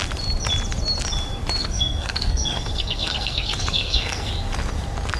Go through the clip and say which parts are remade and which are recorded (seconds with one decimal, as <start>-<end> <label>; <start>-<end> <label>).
0.0-1.6 recorded; 1.6-4.3 remade; 4.3-5.2 recorded